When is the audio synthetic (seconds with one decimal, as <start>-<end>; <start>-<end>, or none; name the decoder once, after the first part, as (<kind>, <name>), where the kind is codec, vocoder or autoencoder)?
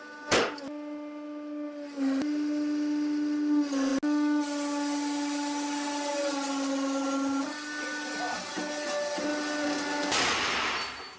none